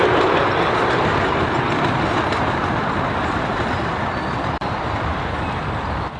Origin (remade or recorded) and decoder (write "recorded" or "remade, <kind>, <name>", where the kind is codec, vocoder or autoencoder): recorded